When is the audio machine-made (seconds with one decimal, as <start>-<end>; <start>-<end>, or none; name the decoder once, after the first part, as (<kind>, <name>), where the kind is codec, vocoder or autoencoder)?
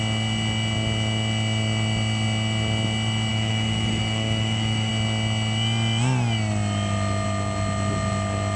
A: 3.3-4.9 (autoencoder, DAC-VAE)